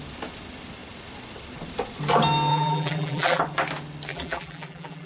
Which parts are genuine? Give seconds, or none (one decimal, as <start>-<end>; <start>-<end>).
0.0-2.5; 3.4-4.1